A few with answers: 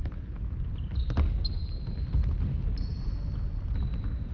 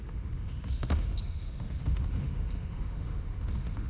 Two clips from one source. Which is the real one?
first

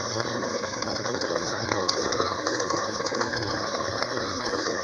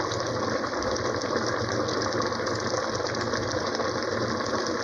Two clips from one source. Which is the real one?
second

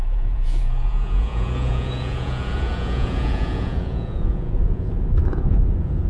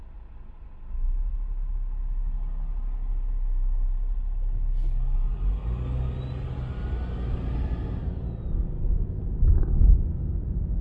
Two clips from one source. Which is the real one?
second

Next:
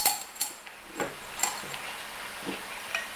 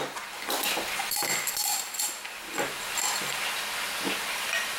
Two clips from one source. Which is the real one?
second